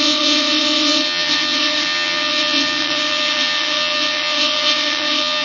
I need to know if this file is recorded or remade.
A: remade